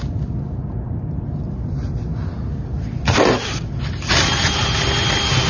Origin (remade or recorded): recorded